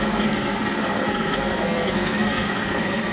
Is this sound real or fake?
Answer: fake